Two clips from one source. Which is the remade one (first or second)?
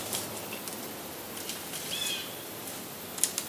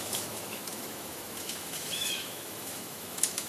second